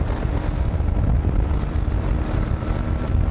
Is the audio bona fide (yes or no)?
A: no